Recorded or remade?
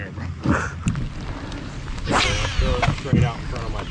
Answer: recorded